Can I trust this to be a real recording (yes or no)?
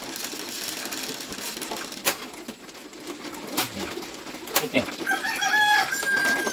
no